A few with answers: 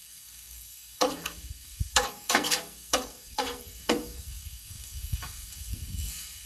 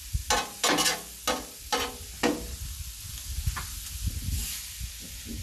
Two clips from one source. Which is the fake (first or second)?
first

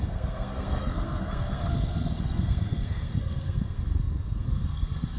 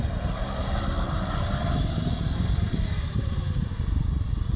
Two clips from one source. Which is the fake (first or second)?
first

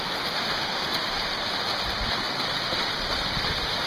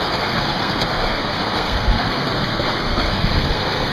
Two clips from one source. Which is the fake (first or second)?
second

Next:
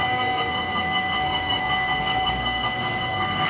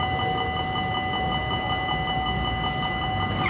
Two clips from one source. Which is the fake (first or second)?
first